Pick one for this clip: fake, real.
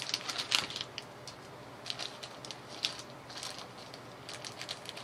real